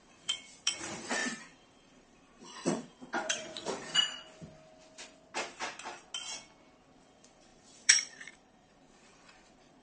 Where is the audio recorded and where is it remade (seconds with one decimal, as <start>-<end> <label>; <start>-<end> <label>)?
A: 0.0-3.9 remade; 3.9-7.0 recorded; 7.0-9.8 remade